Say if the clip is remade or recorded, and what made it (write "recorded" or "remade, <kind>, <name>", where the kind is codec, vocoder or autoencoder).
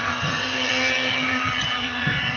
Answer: remade, vocoder, HiFi-GAN